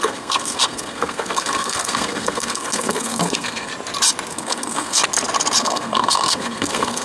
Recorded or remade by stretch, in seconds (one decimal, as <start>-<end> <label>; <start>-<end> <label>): 0.0-3.7 remade; 3.7-4.3 recorded; 4.3-5.0 remade; 5.0-5.6 recorded; 5.6-7.0 remade